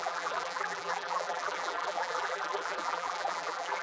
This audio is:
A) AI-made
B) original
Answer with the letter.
A